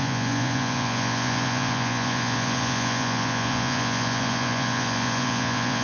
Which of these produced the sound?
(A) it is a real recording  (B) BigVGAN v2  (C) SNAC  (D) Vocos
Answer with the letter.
D